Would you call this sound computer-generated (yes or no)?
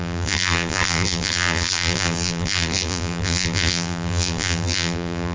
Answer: yes